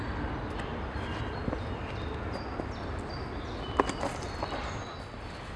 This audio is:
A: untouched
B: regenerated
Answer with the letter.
A